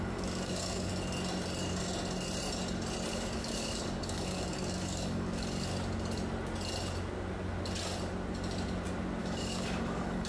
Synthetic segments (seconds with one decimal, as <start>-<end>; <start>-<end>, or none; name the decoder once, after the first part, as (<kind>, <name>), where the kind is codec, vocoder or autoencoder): 0.0-0.9 (codec, DAC); 3.1-5.7; 9.2-10.3